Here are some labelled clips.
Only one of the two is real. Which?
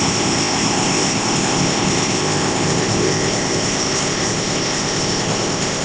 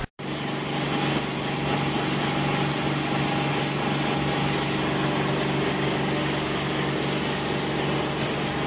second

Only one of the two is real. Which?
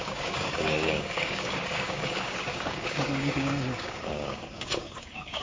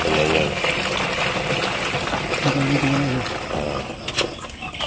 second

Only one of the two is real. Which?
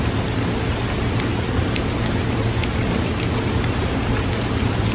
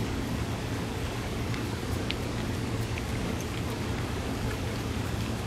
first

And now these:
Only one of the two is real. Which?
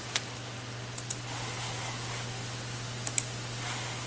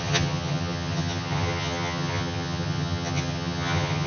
first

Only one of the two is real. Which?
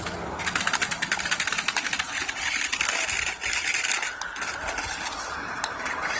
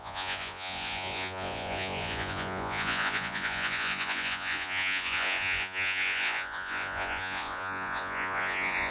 first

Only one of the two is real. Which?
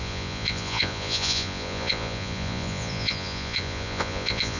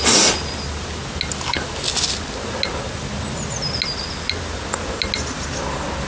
second